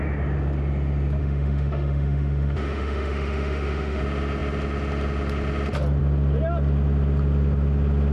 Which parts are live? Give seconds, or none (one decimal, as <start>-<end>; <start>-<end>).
0.0-1.2; 4.0-8.1